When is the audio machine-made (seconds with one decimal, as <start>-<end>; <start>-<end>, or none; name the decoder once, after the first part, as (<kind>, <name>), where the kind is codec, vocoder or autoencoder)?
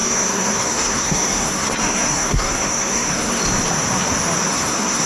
0.0-3.4 (codec, SNAC); 4.5-5.1